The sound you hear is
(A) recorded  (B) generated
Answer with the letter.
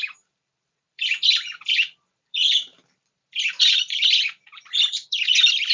B